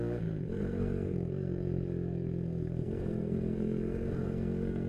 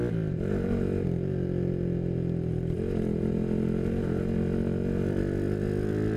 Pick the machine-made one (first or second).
first